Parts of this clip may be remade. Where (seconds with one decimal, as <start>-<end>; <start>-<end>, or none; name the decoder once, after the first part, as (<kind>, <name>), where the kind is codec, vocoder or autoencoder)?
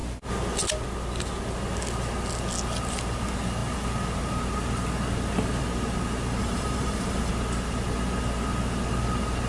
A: 6.4-7.3 (vocoder, BigVGAN v2)